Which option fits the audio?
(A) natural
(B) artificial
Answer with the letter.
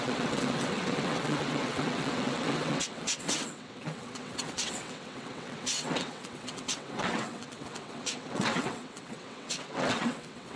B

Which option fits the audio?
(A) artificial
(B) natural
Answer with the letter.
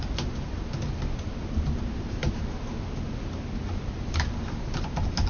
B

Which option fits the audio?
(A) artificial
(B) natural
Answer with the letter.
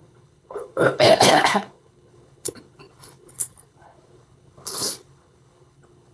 A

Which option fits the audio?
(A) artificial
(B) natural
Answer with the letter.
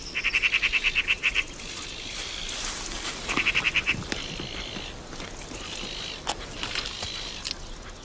B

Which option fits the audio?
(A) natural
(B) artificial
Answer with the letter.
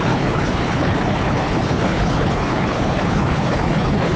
B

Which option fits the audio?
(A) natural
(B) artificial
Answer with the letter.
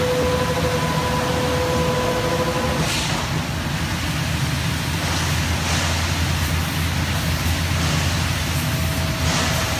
A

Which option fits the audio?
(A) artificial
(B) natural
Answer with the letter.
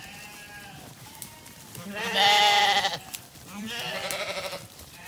A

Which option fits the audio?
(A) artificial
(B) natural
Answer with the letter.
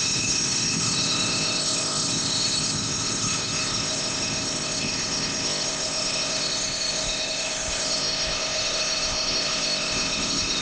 A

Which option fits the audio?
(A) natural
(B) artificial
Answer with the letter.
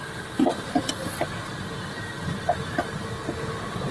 A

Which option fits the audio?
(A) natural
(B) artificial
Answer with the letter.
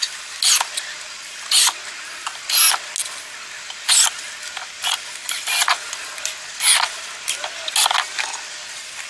A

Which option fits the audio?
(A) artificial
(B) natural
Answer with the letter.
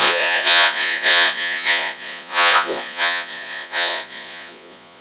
A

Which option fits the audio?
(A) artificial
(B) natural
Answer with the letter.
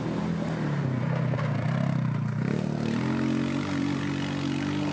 B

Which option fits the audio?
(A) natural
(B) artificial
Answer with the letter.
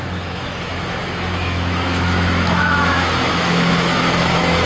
B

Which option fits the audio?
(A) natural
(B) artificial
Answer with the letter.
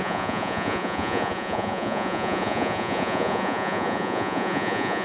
B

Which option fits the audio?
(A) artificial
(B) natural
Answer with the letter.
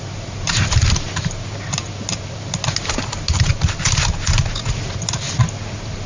B